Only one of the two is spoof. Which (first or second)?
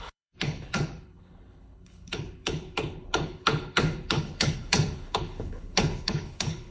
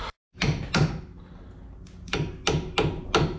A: first